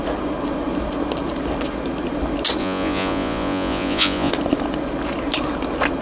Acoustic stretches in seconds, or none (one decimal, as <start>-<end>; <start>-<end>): 0.0-2.6; 4.3-6.0